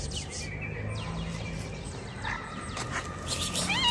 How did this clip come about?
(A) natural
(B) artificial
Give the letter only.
A